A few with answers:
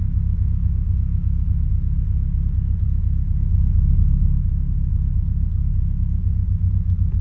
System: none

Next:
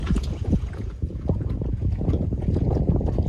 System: vocoder, Vocos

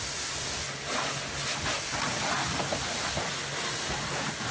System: none